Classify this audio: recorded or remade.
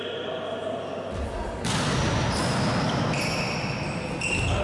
recorded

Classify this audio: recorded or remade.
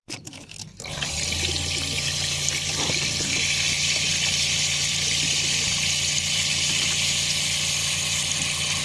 remade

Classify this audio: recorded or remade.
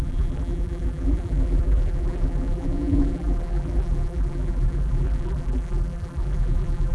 remade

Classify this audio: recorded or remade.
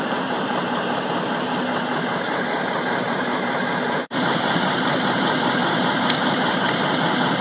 remade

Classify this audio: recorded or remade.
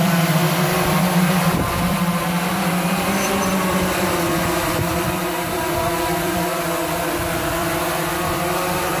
remade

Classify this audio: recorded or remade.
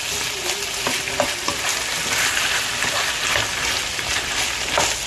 recorded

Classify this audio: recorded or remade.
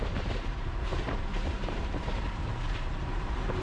remade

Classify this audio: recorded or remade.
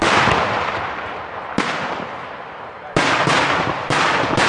remade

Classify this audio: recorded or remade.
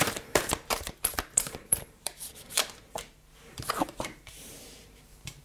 remade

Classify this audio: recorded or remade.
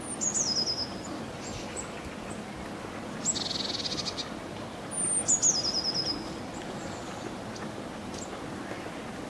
recorded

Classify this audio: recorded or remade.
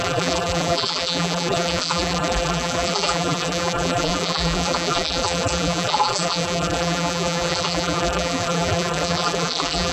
remade